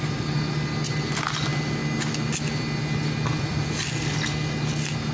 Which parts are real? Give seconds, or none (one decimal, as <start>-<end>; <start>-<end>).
0.0-5.1